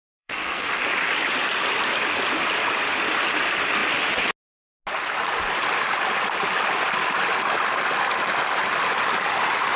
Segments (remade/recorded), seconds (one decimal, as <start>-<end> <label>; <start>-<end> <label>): 0.0-0.7 remade; 0.7-9.8 recorded